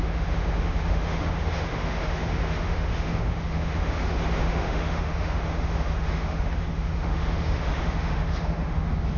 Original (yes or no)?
no